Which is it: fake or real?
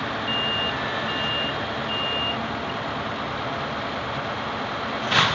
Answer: real